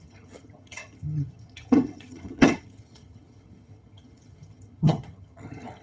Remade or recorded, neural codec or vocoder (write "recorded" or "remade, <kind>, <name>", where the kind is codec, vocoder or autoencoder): remade, vocoder, HiFi-GAN